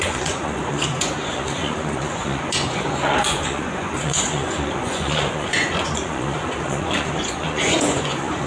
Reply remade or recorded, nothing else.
remade